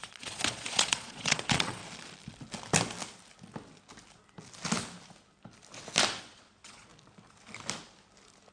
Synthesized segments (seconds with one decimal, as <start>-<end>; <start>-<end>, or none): 0.0-1.8; 6.2-6.9